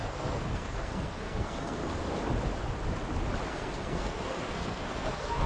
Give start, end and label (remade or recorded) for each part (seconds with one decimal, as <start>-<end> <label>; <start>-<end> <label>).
0.0-1.8 remade; 1.8-3.5 recorded; 3.5-5.5 remade